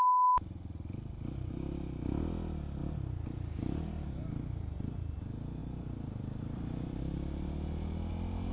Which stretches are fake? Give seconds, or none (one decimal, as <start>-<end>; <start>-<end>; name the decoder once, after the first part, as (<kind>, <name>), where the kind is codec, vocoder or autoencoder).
5.6-8.1 (vocoder, BigVGAN v2)